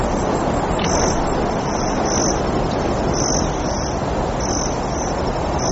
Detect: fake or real real